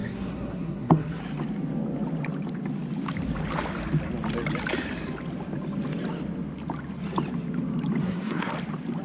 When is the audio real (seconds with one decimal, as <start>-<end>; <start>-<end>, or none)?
1.2-8.0; 8.5-9.0